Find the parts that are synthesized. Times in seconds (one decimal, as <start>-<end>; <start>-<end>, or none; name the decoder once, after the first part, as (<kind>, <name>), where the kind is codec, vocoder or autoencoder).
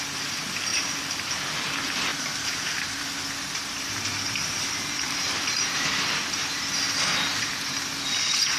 0.7-1.3 (vocoder, BigVGAN v2); 2.1-3.0; 4.4-6.6